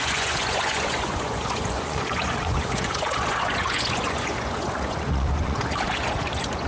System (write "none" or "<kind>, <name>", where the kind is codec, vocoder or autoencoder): vocoder, Vocos